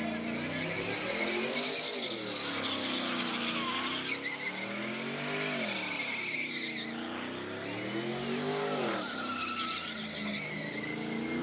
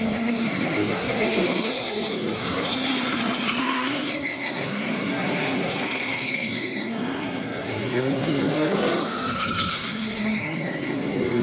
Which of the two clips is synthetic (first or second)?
second